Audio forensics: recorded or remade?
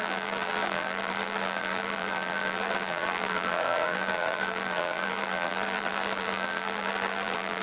remade